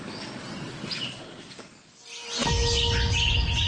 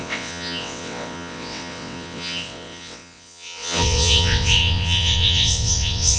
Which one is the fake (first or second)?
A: second